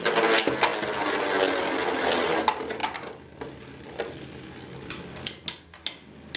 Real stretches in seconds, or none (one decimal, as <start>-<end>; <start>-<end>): 0.0-6.4